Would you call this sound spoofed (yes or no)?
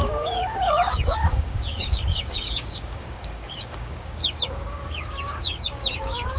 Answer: yes